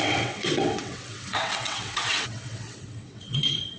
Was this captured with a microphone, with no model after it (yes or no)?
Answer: no